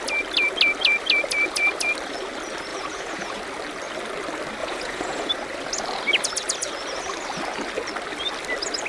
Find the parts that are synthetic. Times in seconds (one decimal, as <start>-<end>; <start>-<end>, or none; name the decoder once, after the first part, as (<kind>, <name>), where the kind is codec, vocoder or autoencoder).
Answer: 2.7-3.4 (vocoder, Vocos); 4.6-5.3